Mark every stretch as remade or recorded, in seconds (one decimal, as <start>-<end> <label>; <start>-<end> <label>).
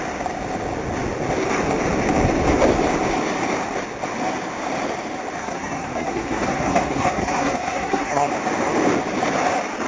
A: 0.0-5.4 recorded; 5.4-8.3 remade; 8.3-9.9 recorded